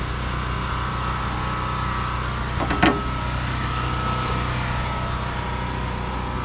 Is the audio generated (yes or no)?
no